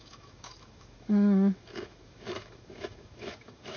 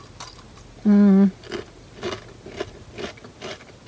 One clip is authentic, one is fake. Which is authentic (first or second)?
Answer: second